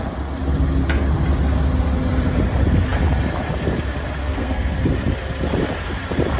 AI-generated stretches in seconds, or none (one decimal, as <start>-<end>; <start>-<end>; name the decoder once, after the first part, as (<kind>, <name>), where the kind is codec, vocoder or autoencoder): 4.2-4.8 (codec, SNAC)